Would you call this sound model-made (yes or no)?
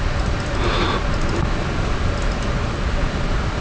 no